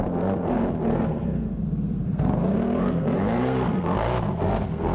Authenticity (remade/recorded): remade